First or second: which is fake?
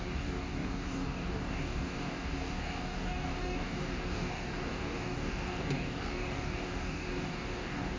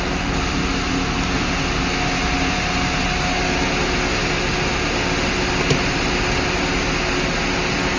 first